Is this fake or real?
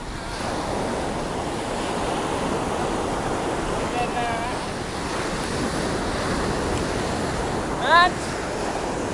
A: real